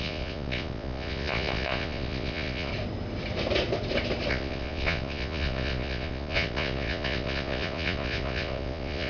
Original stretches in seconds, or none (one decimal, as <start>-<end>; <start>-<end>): 2.7-4.3